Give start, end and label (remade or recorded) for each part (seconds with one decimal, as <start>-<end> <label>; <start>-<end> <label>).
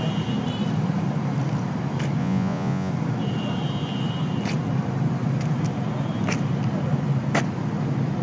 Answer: 0.0-2.2 recorded; 2.2-2.9 remade; 2.9-8.2 recorded